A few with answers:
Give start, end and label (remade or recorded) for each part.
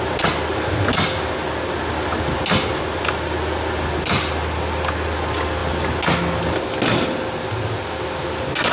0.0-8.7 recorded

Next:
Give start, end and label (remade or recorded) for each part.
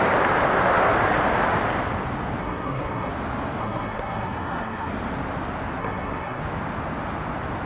0.0-2.4 recorded; 2.4-3.1 remade; 3.1-3.6 recorded; 3.6-4.9 remade; 4.9-5.8 recorded; 5.8-6.4 remade; 6.4-7.7 recorded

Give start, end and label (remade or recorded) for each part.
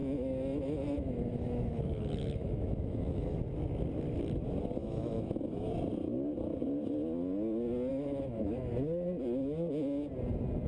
0.0-3.4 remade; 3.4-4.8 recorded; 4.8-5.7 remade; 5.7-7.9 recorded; 7.9-8.7 remade; 8.7-10.7 recorded